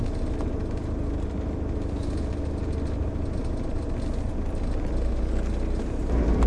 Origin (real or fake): real